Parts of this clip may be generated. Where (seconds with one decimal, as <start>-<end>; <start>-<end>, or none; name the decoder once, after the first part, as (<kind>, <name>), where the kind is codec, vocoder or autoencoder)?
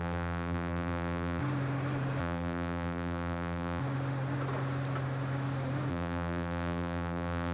0.0-1.4 (vocoder, BigVGAN v2); 2.2-3.8; 5.9-7.5